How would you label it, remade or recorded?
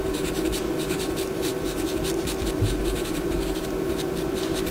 remade